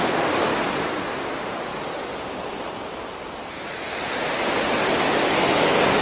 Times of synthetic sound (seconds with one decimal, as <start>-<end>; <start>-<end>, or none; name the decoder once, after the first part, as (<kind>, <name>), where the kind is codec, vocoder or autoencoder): none